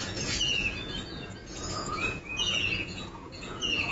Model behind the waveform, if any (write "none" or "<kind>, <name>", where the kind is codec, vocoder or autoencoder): vocoder, Vocos